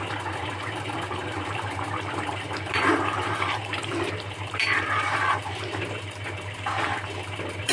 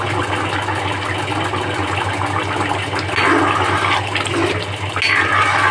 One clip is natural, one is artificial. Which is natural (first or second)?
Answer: second